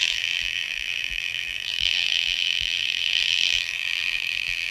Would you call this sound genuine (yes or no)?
no